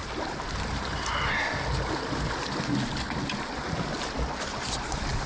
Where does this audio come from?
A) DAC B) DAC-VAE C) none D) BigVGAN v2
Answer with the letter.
C